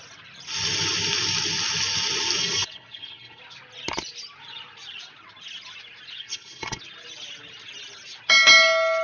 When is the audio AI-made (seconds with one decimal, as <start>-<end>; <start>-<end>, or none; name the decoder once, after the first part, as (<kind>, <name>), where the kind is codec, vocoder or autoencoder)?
2.4-3.4 (codec, HILCodec); 6.2-6.8